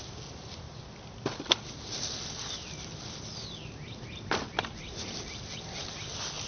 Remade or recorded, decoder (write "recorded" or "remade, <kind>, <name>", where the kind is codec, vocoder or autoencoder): recorded